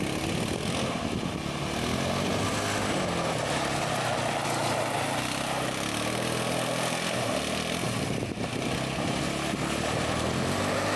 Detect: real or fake real